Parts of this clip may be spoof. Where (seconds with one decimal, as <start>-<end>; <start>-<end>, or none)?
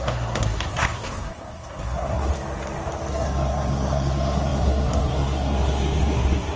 0.0-2.3; 3.1-6.6